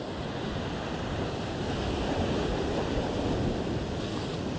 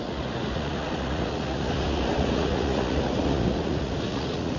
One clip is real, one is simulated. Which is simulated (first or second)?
second